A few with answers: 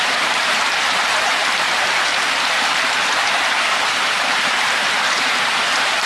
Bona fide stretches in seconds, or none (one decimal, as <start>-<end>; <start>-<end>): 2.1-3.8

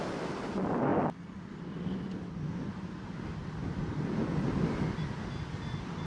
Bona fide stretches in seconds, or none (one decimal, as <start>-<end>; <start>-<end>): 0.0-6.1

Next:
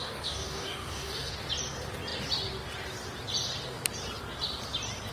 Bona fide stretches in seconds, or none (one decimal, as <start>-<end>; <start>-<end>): 1.3-5.1